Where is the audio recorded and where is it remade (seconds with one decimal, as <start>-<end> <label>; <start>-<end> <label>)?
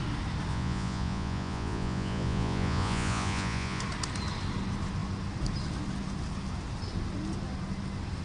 0.0-0.5 recorded; 0.5-3.8 remade; 3.8-8.2 recorded